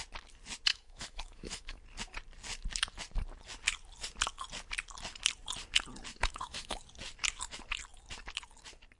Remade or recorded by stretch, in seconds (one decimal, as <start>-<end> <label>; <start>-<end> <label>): 0.0-0.7 recorded; 0.7-1.8 remade; 1.8-6.2 recorded; 6.2-6.8 remade; 6.8-9.0 recorded